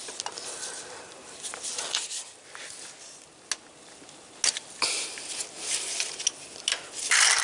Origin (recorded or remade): recorded